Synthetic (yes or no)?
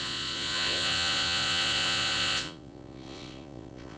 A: yes